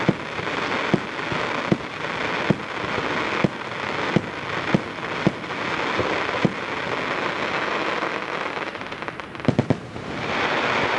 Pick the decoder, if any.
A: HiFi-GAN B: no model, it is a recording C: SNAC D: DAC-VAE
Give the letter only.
B